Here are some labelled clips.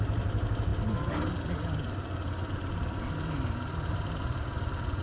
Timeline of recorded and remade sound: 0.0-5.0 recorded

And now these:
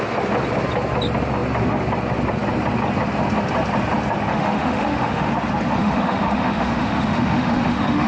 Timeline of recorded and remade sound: 0.0-4.3 recorded; 4.3-5.3 remade; 5.3-5.8 recorded; 5.8-8.1 remade

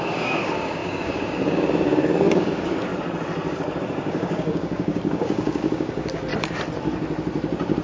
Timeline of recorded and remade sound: 0.0-2.9 remade; 2.9-3.8 recorded; 3.8-6.3 remade; 6.3-7.8 recorded

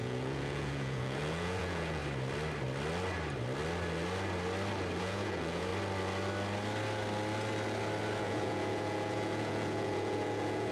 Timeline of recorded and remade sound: 0.0-2.0 remade; 2.0-5.0 recorded; 5.0-5.7 remade; 5.7-8.2 recorded; 8.2-10.7 remade

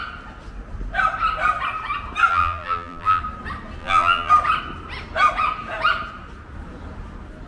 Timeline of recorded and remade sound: 0.0-2.3 recorded; 2.3-3.2 remade; 3.2-3.8 recorded; 3.8-4.3 remade; 4.3-7.5 recorded

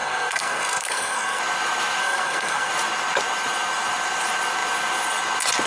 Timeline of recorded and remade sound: 0.0-1.4 remade; 1.4-2.0 recorded; 2.0-2.7 remade; 2.7-5.7 recorded

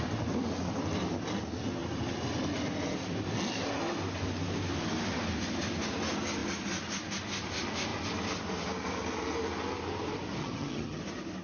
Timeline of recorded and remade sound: 0.0-10.4 recorded; 10.4-11.0 remade; 11.0-11.4 recorded

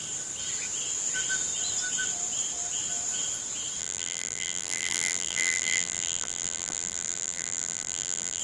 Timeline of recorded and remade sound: 0.0-3.8 recorded; 3.8-8.4 remade